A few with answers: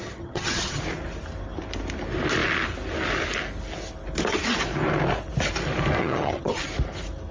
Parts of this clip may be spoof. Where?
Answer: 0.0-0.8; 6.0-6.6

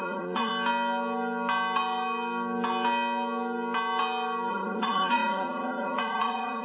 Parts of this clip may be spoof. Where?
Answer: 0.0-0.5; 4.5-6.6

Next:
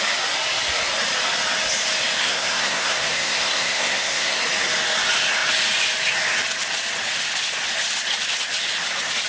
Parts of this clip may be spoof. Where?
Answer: 2.2-4.4

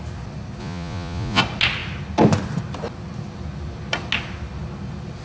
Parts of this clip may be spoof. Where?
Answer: 0.6-1.4

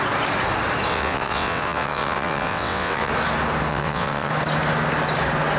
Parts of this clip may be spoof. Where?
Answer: 0.9-3.1; 3.7-4.3

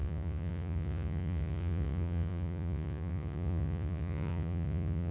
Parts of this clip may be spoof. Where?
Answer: 0.0-5.1

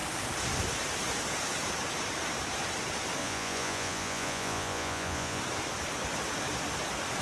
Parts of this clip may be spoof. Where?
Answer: 3.2-5.4